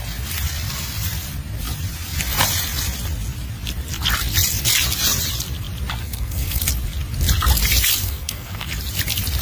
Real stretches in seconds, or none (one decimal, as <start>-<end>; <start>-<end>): 0.0-6.0; 6.6-8.0; 8.7-9.4